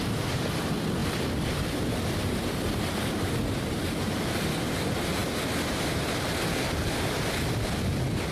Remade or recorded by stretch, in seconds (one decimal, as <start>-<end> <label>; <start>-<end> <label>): 0.0-8.3 remade